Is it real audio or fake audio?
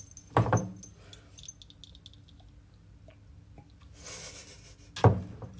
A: real